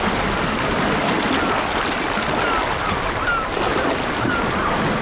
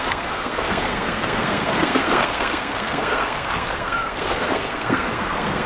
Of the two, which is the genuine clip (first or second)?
first